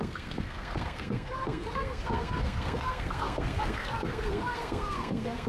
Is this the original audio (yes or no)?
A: no